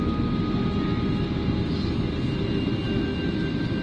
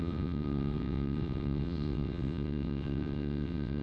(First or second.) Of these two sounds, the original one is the first